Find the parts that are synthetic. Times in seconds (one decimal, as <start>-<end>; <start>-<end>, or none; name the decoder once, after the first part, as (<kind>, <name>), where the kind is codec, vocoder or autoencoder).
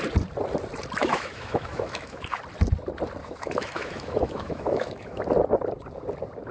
1.0-2.4 (autoencoder, DAC-VAE); 3.2-5.2